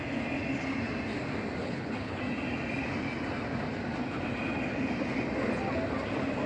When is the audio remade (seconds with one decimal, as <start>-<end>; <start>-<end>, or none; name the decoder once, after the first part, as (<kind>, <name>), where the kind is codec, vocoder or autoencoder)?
1.6-2.2 (codec, HILCodec)